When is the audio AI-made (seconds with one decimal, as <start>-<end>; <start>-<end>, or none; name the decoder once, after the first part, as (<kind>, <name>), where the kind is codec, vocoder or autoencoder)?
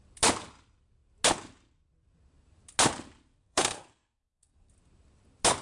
3.4-4.7 (codec, SNAC)